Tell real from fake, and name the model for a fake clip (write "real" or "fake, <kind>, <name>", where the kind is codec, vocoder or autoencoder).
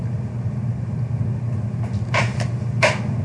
real